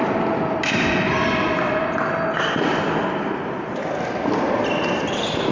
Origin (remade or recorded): recorded